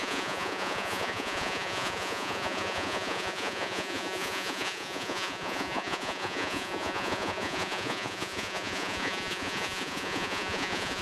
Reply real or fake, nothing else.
fake